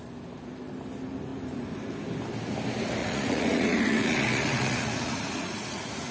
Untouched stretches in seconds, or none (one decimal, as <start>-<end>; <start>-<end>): 0.0-3.0